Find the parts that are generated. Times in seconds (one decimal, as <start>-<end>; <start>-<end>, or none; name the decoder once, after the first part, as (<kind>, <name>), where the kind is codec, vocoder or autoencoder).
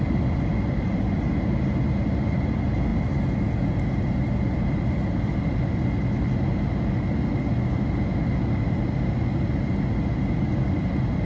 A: none